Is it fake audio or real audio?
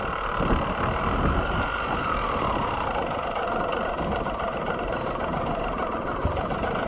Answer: real